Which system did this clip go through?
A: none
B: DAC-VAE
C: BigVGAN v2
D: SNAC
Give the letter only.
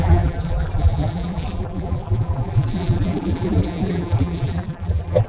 C